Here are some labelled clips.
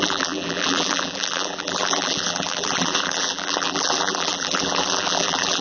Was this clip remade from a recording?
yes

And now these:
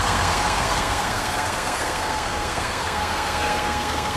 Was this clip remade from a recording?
yes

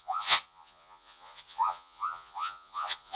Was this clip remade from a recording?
yes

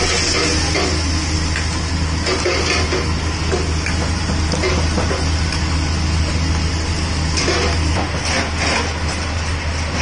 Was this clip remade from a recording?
no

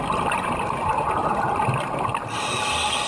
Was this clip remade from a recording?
no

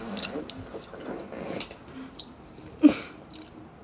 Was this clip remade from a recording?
no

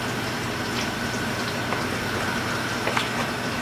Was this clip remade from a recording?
no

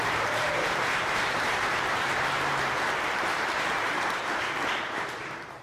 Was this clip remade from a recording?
yes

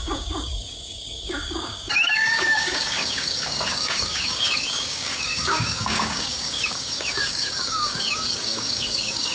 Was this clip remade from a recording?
yes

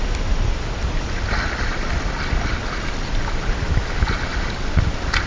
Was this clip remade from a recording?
no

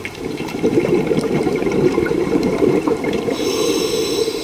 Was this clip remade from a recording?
yes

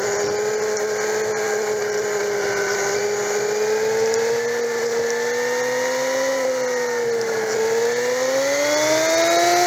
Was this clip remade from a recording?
no